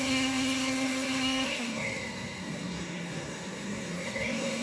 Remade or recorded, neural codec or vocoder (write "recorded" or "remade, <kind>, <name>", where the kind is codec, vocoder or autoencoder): remade, codec, SNAC